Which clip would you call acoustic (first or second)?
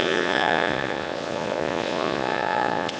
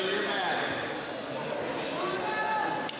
second